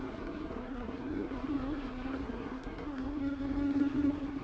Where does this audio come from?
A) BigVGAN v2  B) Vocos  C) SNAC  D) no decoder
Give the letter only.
C